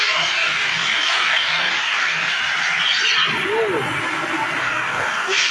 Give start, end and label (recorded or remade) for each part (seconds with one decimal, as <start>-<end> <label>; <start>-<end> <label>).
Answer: 0.0-2.4 remade; 2.4-4.6 recorded; 4.6-5.5 remade